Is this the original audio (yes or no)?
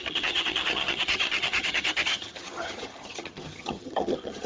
no